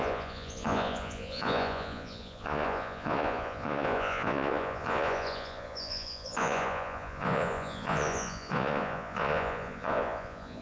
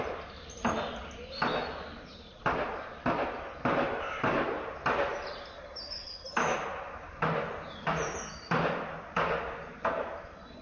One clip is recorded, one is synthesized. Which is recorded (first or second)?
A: second